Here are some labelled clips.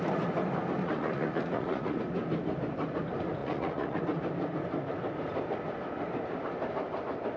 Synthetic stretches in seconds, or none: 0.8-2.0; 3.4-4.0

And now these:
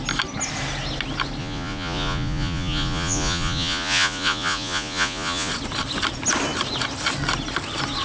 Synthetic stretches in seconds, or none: 1.4-5.5

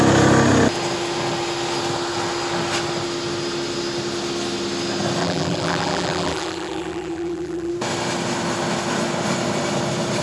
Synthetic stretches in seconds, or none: 5.2-7.7